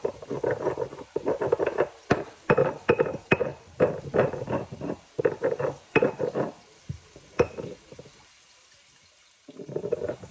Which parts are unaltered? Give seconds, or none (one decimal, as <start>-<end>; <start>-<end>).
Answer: 0.0-10.3